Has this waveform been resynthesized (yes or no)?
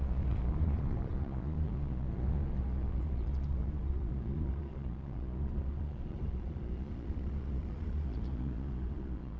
yes